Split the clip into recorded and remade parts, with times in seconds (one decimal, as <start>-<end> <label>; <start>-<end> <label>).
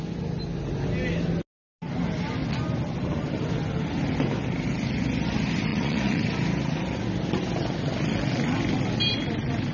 0.0-5.7 recorded; 5.7-6.2 remade; 6.2-9.7 recorded